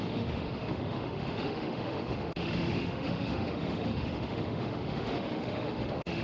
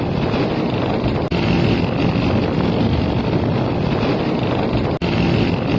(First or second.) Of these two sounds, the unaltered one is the second